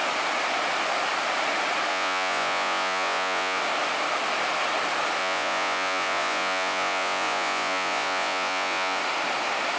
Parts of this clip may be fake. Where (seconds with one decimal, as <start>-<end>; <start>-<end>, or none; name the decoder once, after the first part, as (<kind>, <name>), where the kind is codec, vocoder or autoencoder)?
1.9-3.6 (vocoder, Vocos); 5.2-9.0